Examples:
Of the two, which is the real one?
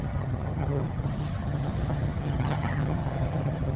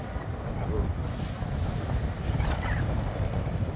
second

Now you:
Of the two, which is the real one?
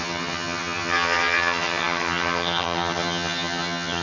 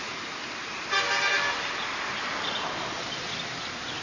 second